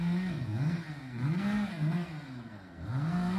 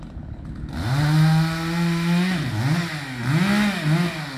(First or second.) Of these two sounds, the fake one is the first